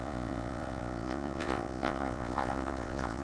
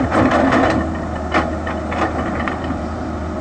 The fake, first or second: first